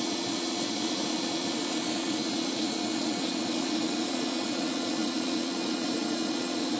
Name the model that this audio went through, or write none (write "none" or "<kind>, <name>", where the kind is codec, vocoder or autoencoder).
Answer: vocoder, Vocos